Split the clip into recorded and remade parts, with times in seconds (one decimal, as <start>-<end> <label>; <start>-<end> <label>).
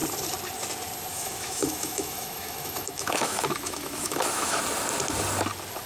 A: 0.0-1.1 recorded; 1.1-4.6 remade; 4.6-5.9 recorded